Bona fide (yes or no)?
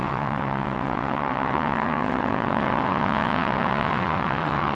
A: no